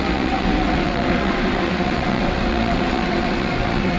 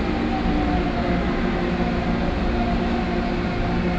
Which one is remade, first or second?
first